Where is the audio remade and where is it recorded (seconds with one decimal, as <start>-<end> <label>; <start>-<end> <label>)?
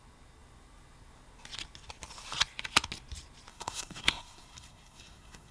0.0-3.5 recorded; 3.5-5.5 remade